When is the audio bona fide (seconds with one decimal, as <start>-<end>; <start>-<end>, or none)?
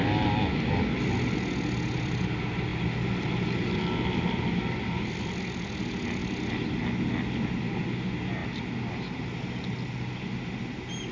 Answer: 0.0-11.1